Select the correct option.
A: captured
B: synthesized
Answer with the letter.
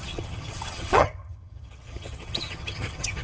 B